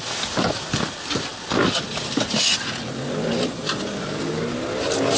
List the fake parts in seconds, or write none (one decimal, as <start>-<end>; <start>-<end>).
none